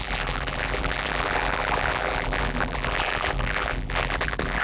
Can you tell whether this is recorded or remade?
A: remade